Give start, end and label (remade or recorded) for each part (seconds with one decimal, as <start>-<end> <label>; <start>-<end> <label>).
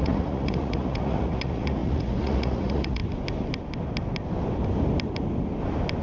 0.0-3.0 remade; 3.0-6.0 recorded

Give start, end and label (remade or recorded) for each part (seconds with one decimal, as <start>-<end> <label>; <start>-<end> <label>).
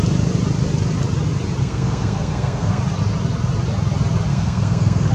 0.0-1.6 recorded; 1.6-2.8 remade; 2.8-4.3 recorded; 4.3-5.1 remade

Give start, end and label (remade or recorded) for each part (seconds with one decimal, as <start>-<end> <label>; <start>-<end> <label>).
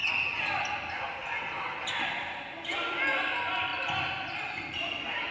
0.0-5.3 recorded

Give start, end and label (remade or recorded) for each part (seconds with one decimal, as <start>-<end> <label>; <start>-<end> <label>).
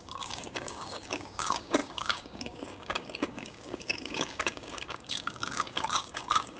0.0-6.6 remade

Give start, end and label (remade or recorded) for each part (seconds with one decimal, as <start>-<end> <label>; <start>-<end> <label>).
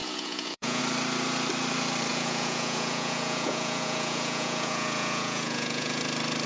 0.0-0.8 remade; 0.8-2.1 recorded; 2.1-6.0 remade; 6.0-6.5 recorded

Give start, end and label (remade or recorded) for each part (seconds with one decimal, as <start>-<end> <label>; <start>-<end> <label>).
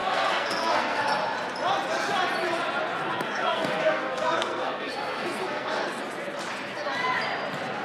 0.0-1.1 remade; 1.1-3.0 recorded; 3.0-6.0 remade; 6.0-7.8 recorded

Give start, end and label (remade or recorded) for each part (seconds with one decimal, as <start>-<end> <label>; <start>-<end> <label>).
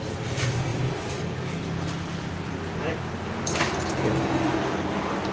0.0-5.3 recorded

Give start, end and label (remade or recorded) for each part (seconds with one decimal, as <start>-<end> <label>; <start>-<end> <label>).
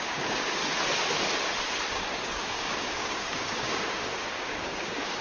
0.0-0.6 remade; 0.6-1.9 recorded; 1.9-5.2 remade